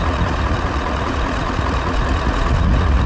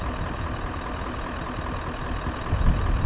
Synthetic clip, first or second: first